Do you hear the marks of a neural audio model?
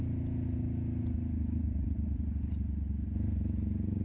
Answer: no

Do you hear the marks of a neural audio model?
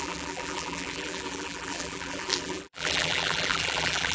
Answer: yes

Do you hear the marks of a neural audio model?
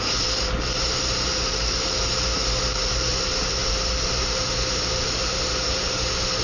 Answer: yes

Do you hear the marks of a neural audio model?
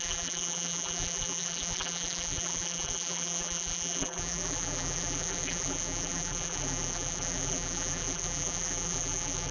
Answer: yes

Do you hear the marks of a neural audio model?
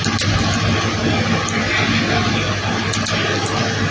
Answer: no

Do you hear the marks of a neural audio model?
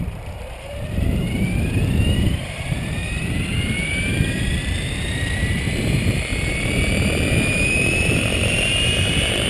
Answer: yes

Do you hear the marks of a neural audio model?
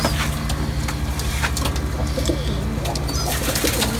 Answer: no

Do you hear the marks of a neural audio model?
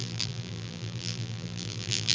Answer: yes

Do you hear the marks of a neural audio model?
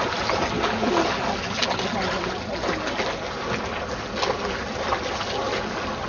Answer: no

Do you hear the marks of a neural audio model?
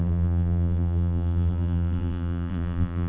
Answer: yes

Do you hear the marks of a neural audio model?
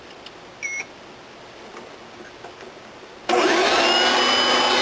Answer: no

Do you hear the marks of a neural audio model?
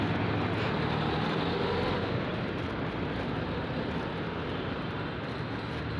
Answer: no